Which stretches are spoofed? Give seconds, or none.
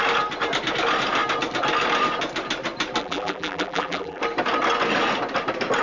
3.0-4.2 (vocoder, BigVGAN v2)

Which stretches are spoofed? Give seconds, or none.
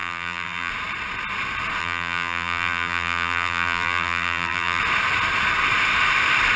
0.0-0.7 (vocoder, BigVGAN v2); 1.8-4.8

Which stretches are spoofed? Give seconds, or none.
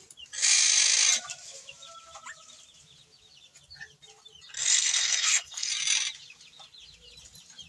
4.6-5.7 (codec, SNAC)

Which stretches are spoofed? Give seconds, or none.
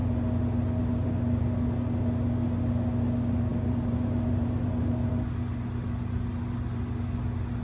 3.5-4.7 (vocoder, BigVGAN v2)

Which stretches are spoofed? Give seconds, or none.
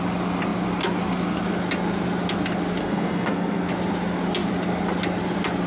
2.8-3.7 (codec, SNAC)